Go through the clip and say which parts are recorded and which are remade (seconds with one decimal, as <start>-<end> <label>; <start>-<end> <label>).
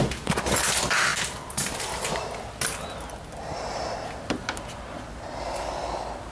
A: 0.0-6.3 recorded